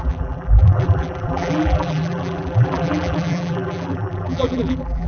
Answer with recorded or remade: remade